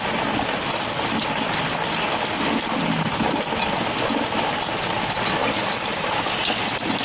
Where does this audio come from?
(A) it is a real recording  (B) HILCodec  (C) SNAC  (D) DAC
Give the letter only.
A